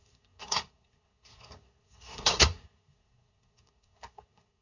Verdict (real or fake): fake